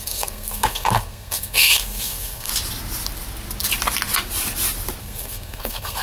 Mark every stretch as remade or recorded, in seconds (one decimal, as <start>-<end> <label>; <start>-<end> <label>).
0.0-2.5 remade; 2.5-5.0 recorded; 5.0-6.0 remade